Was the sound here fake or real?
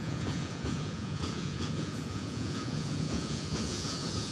fake